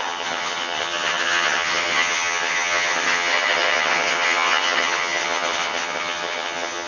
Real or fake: fake